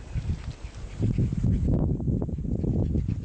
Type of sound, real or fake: real